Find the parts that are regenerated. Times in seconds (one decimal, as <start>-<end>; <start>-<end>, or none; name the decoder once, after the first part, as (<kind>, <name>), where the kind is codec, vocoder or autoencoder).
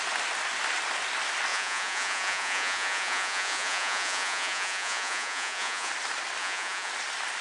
1.5-5.9 (vocoder, Vocos); 6.4-6.9